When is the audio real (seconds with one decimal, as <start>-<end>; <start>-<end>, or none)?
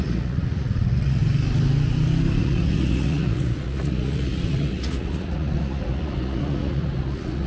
1.2-2.4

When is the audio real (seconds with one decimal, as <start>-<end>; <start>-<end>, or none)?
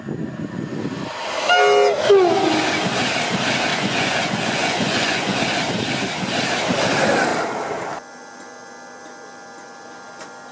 0.0-3.7; 5.4-10.5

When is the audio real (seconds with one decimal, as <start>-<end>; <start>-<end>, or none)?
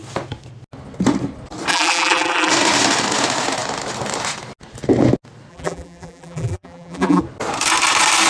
0.0-1.7; 2.5-5.5; 7.2-8.3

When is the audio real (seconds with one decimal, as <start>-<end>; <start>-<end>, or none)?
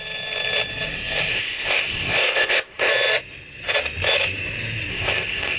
0.0-1.3; 2.9-4.9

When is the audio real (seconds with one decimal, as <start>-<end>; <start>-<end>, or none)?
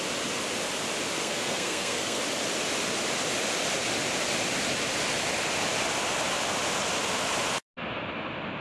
0.0-1.2; 2.2-8.6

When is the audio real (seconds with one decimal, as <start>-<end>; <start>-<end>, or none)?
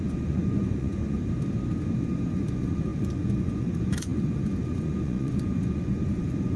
1.2-2.3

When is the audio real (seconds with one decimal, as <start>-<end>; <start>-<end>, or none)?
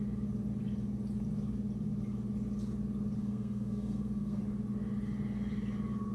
0.0-3.2; 4.4-6.1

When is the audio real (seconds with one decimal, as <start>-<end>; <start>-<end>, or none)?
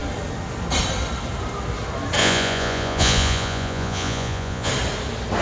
0.0-2.2; 4.7-5.4